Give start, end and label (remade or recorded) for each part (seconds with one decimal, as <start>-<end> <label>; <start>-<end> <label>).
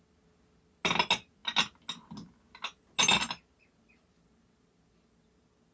0.0-5.7 recorded